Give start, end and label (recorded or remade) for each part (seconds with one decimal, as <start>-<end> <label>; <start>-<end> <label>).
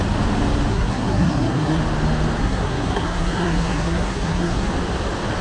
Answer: 0.0-0.7 recorded; 0.7-1.8 remade; 1.8-2.4 recorded; 2.4-4.7 remade; 4.7-5.4 recorded